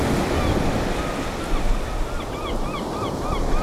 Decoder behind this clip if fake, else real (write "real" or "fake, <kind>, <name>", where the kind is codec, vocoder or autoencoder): real